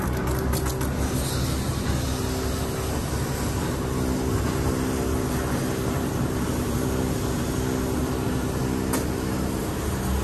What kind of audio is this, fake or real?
real